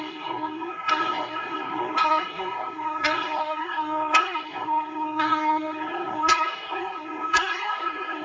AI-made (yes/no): yes